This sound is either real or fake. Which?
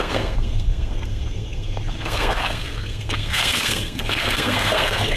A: fake